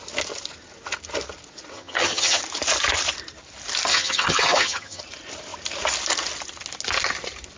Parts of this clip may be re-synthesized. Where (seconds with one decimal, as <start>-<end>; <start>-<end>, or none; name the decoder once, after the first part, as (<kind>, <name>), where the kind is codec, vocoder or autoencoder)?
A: 1.7-2.4 (vocoder, HiFi-GAN); 3.9-5.0